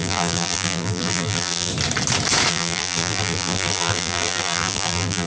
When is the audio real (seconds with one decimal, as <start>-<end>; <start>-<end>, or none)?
1.7-2.5